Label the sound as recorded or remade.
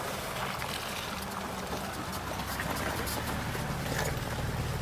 recorded